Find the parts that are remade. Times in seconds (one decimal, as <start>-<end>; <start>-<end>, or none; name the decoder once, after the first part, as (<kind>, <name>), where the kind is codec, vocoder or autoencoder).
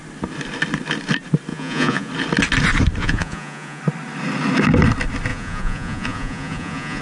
1.5-2.1 (vocoder, Vocos); 3.0-3.8; 5.3-7.0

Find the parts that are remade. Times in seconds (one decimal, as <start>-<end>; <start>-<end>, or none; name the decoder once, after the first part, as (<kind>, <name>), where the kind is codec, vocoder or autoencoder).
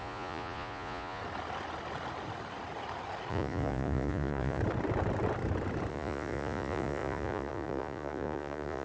0.0-1.2 (vocoder, Vocos); 3.3-4.6; 5.9-8.8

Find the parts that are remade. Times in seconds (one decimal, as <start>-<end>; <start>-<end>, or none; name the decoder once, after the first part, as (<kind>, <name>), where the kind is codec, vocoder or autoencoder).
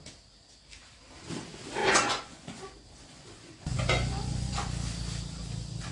1.8-4.7 (vocoder, Vocos)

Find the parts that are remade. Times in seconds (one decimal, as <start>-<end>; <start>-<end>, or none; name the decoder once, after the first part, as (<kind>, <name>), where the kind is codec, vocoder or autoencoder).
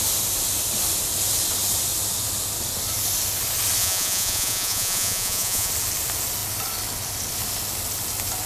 3.8-5.7 (vocoder, Vocos)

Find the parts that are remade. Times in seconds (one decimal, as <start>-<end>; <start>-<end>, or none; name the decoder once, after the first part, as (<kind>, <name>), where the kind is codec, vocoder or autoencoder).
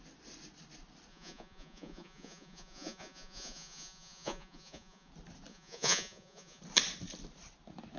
1.1-5.1 (vocoder, Vocos); 5.5-6.6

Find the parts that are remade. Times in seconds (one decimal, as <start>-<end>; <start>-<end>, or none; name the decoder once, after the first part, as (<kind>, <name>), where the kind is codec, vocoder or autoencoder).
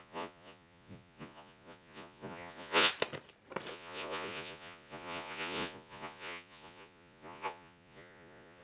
0.0-2.9 (vocoder, Vocos); 3.7-8.6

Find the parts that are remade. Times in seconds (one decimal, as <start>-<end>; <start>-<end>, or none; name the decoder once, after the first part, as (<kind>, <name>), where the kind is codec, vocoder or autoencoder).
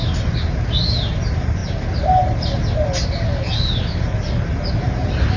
none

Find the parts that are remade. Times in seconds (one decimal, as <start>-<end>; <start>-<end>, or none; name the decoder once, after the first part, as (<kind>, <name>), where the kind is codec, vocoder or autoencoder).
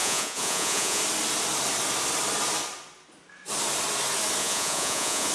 0.0-1.0 (vocoder, Vocos); 4.4-5.3